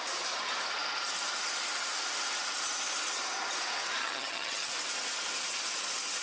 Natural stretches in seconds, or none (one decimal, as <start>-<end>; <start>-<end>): 0.0-4.0; 4.7-6.2